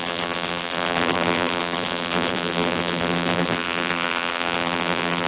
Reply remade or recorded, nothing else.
remade